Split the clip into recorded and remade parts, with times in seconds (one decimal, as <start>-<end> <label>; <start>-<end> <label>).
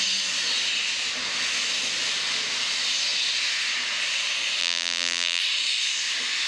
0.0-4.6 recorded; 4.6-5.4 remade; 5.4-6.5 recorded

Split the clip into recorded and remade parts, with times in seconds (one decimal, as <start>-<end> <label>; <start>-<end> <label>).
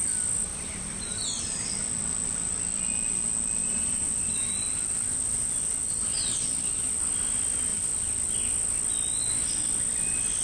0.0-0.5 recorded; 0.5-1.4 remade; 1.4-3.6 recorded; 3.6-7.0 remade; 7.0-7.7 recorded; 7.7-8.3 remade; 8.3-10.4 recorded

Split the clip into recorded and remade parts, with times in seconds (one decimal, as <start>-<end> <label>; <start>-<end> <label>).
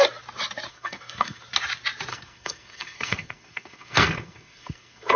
0.0-0.7 recorded; 0.7-1.4 remade; 1.4-2.1 recorded; 2.1-5.2 remade